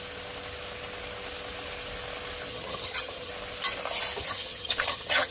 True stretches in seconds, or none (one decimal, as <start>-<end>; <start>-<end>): 0.0-2.5; 3.3-4.2